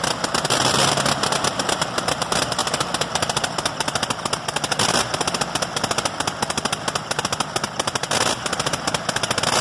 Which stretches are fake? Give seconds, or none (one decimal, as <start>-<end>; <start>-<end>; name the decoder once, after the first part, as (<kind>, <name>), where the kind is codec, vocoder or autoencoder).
none